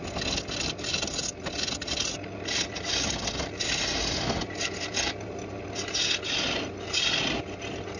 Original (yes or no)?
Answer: yes